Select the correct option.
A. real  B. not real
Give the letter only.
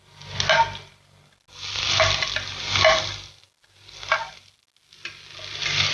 A